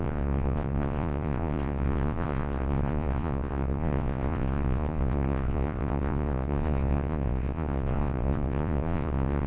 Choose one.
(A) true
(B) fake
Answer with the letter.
B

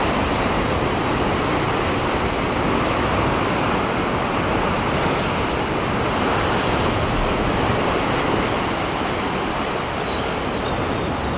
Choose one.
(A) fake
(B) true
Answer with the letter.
B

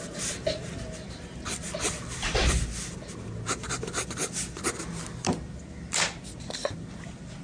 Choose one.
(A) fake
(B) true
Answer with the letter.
B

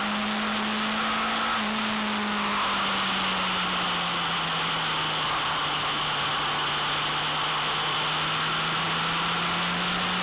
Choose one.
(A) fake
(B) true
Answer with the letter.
B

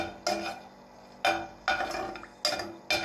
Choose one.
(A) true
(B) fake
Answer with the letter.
A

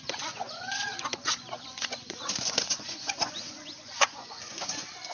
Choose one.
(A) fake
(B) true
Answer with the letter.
A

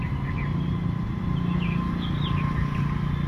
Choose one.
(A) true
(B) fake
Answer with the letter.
A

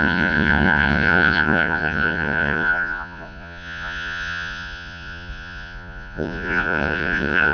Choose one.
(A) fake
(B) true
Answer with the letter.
A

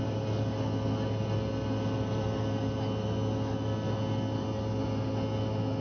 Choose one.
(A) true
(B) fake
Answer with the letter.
A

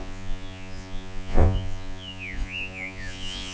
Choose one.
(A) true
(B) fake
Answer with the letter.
B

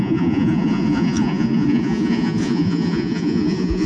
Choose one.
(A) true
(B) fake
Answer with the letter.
B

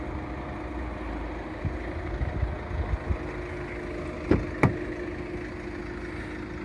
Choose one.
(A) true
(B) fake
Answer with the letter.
A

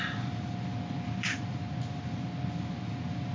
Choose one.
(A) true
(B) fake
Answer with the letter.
A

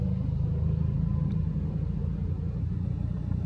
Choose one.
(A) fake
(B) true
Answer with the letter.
B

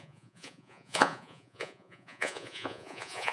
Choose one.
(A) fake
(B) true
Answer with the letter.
A